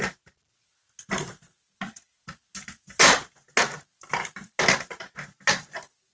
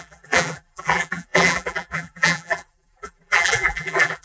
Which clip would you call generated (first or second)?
second